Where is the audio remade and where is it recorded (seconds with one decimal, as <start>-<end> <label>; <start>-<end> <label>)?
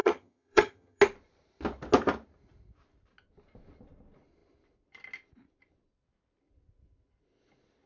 0.0-1.0 remade; 1.0-7.9 recorded